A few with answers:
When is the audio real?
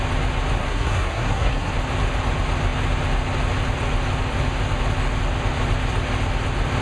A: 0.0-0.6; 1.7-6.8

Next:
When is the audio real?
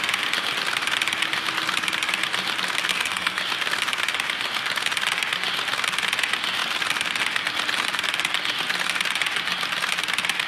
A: 0.0-2.9; 3.4-10.5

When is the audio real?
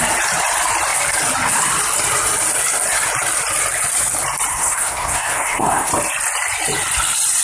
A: 0.0-4.5; 5.9-7.4